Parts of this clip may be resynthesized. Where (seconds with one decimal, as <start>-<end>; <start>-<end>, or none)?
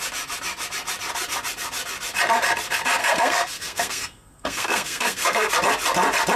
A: 3.0-5.5